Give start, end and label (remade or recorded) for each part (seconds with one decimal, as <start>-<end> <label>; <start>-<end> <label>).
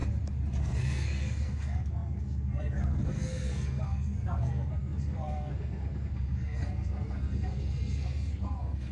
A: 0.0-0.6 recorded; 0.6-8.9 remade